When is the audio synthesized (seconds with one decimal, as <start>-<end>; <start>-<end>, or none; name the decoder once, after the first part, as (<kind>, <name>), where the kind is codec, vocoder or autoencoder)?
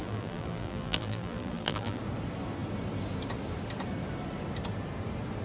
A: 0.0-2.0 (vocoder, BigVGAN v2)